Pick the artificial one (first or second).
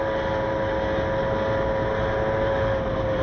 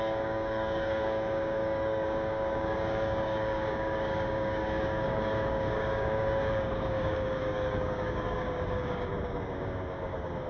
second